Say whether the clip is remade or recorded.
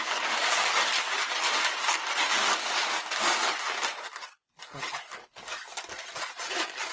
recorded